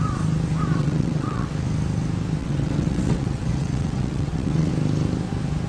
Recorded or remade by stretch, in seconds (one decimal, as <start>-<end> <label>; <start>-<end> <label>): 0.0-0.8 recorded; 0.8-1.5 remade; 1.5-2.4 recorded; 2.4-4.7 remade; 4.7-5.7 recorded